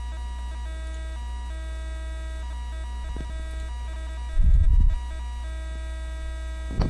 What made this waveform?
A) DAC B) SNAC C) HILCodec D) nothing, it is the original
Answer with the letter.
D